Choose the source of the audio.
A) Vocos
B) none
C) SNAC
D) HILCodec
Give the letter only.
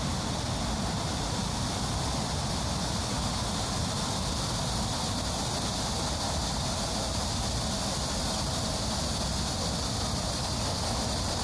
B